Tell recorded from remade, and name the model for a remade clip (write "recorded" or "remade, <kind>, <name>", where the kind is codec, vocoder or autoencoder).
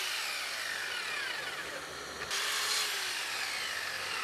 recorded